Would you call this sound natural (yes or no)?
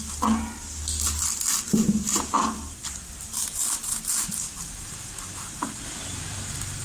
yes